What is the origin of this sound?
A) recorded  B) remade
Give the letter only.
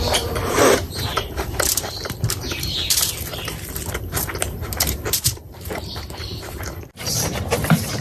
B